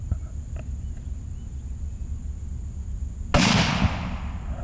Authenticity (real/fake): real